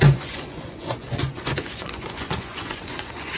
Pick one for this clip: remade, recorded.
remade